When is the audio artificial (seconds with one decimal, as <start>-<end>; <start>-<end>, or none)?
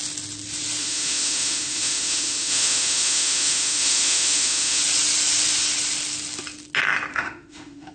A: 0.8-4.8; 7.1-7.9